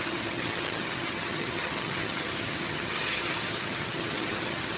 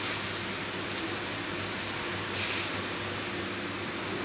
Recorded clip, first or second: second